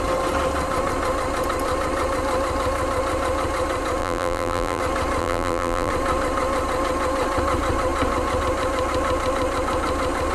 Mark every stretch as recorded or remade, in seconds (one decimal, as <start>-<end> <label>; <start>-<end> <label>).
0.0-4.0 recorded; 4.0-4.8 remade; 4.8-5.2 recorded; 5.2-5.9 remade; 5.9-10.3 recorded